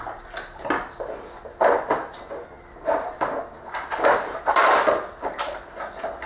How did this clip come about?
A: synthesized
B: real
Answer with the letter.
B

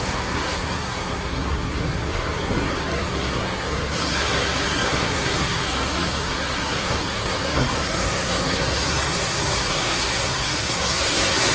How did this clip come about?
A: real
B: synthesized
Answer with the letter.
B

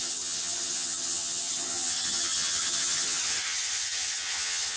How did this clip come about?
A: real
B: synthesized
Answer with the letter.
B